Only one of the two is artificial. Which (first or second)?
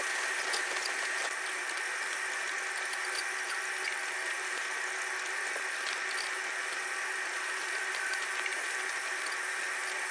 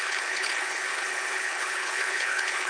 second